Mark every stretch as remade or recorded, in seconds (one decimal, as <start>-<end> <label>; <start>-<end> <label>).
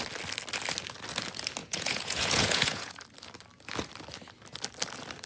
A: 0.0-1.6 recorded; 1.6-3.0 remade; 3.0-5.3 recorded